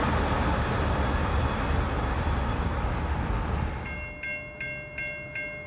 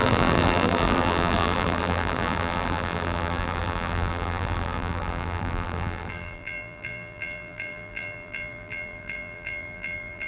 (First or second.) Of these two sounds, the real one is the first